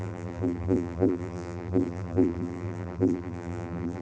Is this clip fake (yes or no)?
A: yes